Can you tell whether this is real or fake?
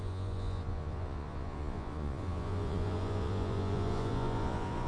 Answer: fake